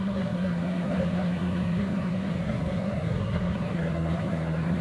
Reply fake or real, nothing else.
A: fake